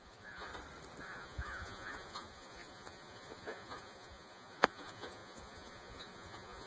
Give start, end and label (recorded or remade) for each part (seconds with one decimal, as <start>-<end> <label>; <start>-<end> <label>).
0.0-0.5 remade; 0.5-1.0 recorded; 1.0-6.7 remade